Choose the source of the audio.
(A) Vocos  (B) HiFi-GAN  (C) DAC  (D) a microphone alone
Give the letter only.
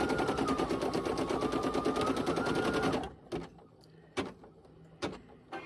D